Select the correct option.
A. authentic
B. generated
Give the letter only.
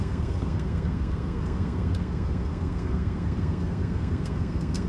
B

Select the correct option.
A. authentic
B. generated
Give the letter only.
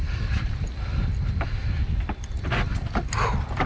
A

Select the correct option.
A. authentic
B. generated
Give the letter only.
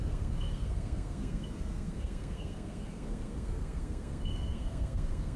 B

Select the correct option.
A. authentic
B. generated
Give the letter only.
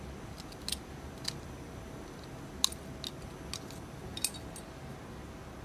A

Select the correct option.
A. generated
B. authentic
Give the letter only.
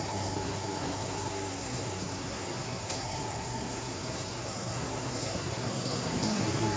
A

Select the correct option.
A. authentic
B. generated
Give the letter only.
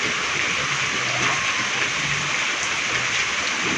A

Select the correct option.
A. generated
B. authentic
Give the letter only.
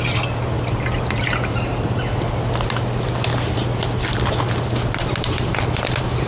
B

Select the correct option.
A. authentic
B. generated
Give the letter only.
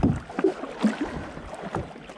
A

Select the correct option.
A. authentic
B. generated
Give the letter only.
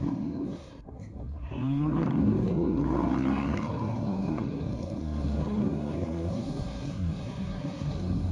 B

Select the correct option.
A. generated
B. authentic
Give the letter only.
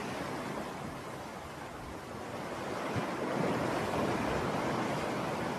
B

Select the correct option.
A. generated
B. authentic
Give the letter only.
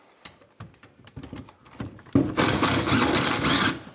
B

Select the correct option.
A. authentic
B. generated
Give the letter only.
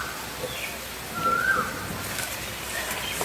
A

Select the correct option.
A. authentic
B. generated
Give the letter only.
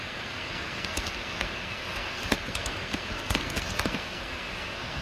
B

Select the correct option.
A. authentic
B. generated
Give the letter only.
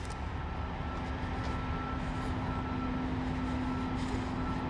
A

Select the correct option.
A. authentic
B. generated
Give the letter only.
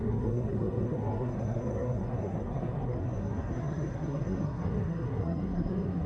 B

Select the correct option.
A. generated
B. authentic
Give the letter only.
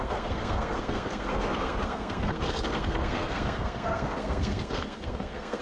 A